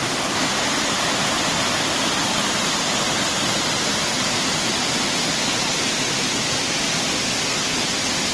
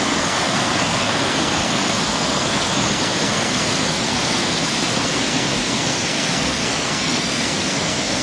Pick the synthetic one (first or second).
second